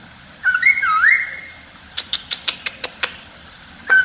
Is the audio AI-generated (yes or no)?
yes